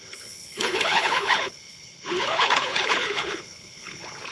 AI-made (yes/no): yes